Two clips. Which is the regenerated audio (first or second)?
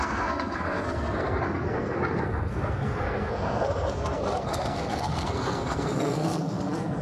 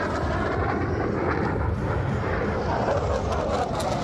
first